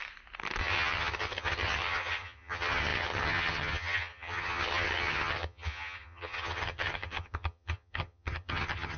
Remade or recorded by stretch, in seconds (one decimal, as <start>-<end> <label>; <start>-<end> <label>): 0.0-0.6 recorded; 0.6-9.0 remade